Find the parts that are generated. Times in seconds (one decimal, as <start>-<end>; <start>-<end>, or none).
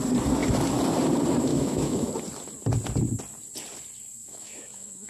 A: 1.5-2.1; 4.2-5.1